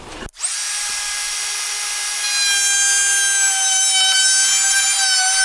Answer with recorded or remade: recorded